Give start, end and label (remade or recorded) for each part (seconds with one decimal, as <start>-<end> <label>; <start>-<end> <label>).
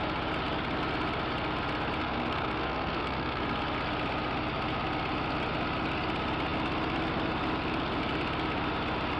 0.0-2.0 recorded; 2.0-3.4 remade; 3.4-9.2 recorded